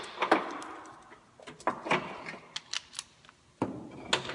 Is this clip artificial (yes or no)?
no